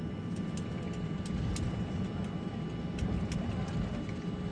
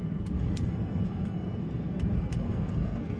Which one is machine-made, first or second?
second